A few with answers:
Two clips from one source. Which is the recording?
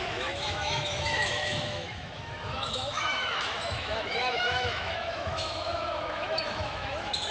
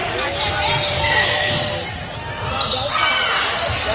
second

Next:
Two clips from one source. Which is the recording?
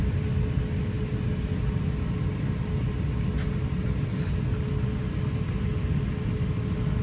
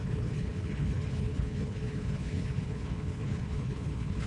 first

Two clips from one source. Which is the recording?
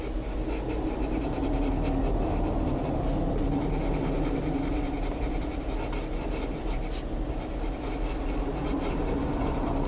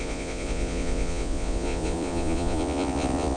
first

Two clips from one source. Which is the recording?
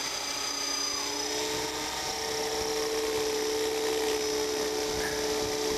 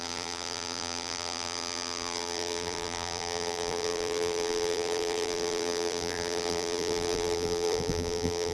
first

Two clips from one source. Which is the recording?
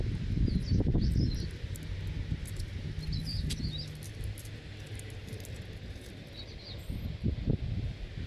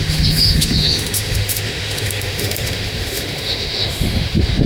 first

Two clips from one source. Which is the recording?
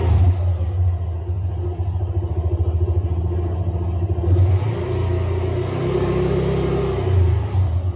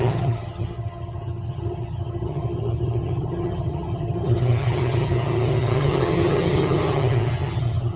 first